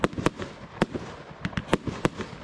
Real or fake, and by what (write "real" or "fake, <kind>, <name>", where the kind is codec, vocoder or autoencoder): real